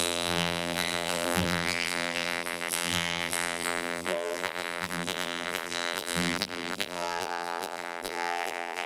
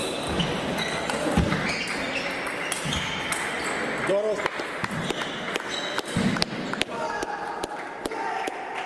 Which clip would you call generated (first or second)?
first